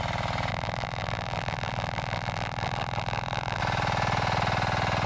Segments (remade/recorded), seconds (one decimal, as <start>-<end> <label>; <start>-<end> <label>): 0.0-0.5 recorded; 0.5-3.6 remade; 3.6-5.1 recorded

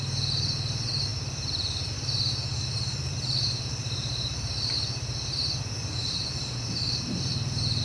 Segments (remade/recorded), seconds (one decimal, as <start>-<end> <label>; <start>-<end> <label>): 0.0-1.1 recorded; 1.1-1.9 remade; 1.9-2.5 recorded; 2.5-4.7 remade; 4.7-6.0 recorded; 6.0-7.8 remade

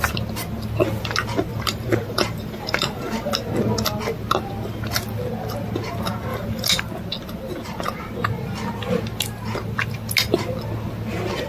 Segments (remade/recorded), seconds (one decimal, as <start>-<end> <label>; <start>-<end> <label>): 0.0-1.5 recorded; 1.5-3.3 remade; 3.3-6.3 recorded; 6.3-6.8 remade; 6.8-11.5 recorded

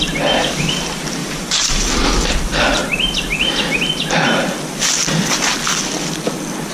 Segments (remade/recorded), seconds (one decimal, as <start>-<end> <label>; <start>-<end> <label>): 0.0-1.2 recorded; 1.2-2.1 remade; 2.1-6.7 recorded

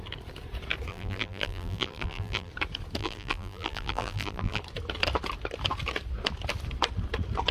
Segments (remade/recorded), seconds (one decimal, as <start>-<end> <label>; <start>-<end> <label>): 0.0-0.9 recorded; 0.9-2.5 remade; 2.5-3.0 recorded; 3.0-4.6 remade; 4.6-7.5 recorded

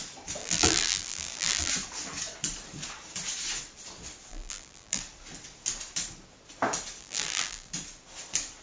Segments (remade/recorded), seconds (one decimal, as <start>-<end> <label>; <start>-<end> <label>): 0.0-0.4 recorded; 0.4-1.7 remade; 1.7-4.3 recorded; 4.3-5.0 remade; 5.0-7.0 recorded; 7.0-7.7 remade; 7.7-8.6 recorded

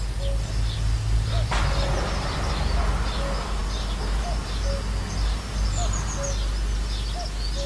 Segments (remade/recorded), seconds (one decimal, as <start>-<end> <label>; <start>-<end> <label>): 0.0-7.7 recorded